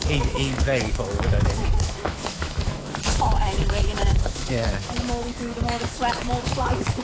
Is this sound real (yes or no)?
no